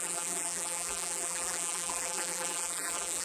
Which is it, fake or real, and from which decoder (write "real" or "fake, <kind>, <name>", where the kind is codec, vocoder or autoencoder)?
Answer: fake, vocoder, BigVGAN v2